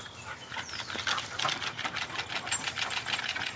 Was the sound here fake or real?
real